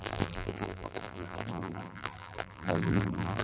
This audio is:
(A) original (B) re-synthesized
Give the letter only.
B